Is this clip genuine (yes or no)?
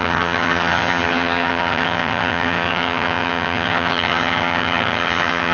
no